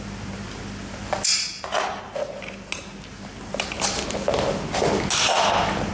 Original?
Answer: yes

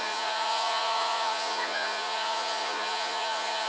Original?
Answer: no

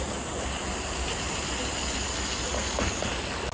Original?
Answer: yes